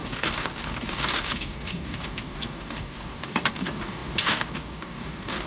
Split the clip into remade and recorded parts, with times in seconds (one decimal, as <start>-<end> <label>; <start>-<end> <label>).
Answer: 0.0-5.5 remade